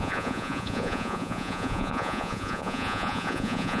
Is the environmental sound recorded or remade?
remade